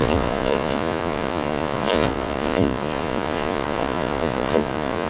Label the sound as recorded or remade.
remade